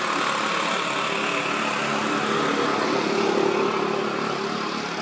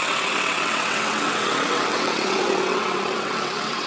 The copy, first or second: second